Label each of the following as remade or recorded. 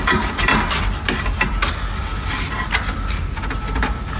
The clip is recorded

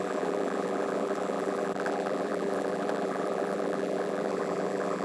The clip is remade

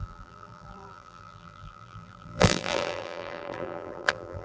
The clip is remade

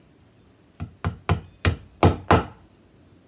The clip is recorded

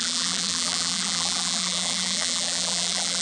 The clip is remade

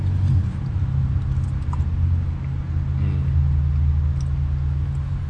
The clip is recorded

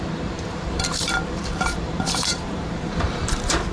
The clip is remade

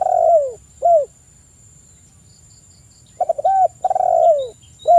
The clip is recorded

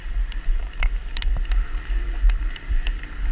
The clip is remade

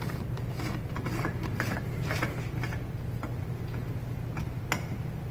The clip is recorded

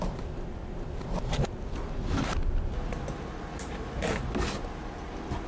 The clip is recorded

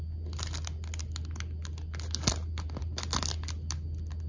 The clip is recorded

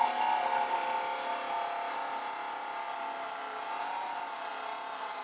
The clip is recorded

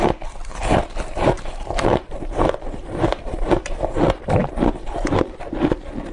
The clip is remade